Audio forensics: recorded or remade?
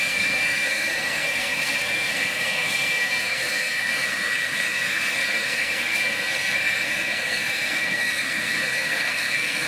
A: remade